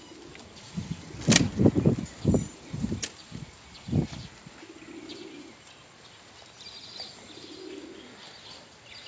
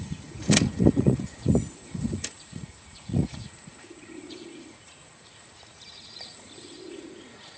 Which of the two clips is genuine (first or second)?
first